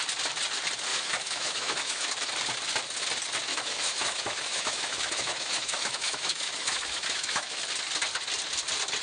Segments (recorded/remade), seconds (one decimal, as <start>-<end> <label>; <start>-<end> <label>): 0.0-0.9 recorded; 0.9-2.1 remade; 2.1-3.5 recorded; 3.5-7.6 remade; 7.6-9.0 recorded